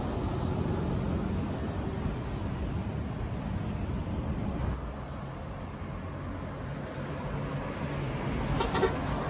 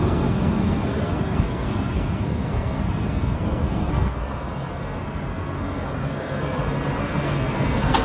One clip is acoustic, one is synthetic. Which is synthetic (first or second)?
second